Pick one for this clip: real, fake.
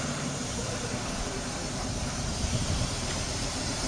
fake